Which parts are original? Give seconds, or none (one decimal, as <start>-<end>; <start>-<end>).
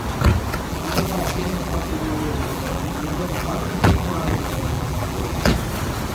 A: 0.0-0.7; 1.9-2.5; 5.5-6.1